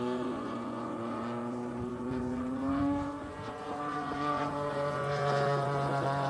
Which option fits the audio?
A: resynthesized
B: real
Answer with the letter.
A